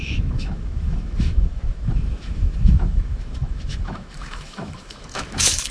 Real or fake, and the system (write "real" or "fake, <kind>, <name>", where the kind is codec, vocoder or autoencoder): fake, autoencoder, DAC-VAE